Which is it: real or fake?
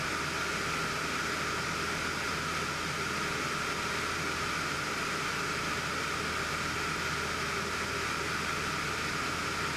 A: real